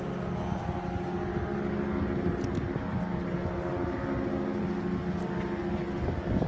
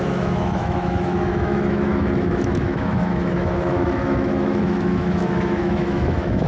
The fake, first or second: second